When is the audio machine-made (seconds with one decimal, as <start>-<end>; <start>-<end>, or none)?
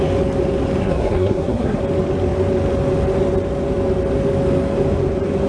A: 0.8-1.8